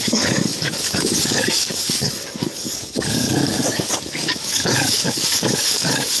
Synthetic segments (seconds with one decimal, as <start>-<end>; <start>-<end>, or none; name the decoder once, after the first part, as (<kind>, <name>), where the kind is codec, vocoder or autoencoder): 0.0-6.2 (codec, DAC)

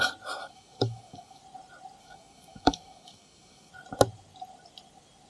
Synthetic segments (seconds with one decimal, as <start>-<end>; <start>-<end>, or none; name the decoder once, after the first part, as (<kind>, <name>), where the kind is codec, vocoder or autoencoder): 0.4-1.4 (codec, DAC); 2.0-3.7

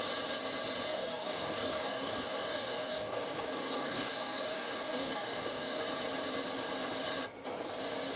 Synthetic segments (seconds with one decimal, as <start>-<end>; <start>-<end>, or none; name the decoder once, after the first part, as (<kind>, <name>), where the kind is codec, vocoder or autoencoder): 0.9-5.8 (codec, DAC)

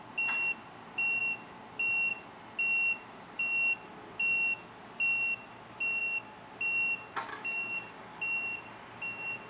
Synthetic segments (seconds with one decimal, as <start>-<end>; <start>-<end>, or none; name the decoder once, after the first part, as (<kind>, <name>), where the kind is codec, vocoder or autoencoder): 7.3-8.2 (codec, DAC)